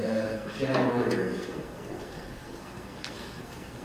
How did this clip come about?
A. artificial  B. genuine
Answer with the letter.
A